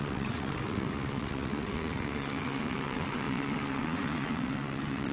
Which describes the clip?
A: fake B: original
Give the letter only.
A